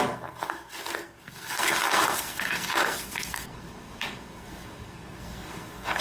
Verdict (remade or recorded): remade